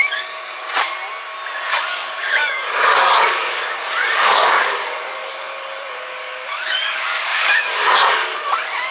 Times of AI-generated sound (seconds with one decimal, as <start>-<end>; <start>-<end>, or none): 0.0-0.6; 1.7-8.9